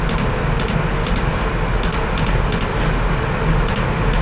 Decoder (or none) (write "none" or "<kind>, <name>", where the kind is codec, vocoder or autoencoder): none